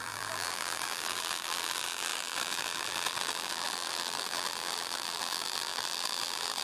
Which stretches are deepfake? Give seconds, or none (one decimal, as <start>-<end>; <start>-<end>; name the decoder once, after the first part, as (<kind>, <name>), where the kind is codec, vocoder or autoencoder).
0.0-6.6 (vocoder, BigVGAN v2)